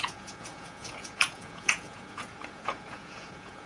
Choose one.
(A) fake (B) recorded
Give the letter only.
A